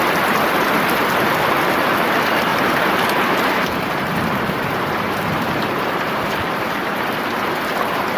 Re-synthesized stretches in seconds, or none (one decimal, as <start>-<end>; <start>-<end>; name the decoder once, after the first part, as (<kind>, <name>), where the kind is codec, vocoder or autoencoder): 2.5-6.8 (vocoder, BigVGAN v2)